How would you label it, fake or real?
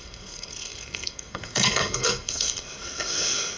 fake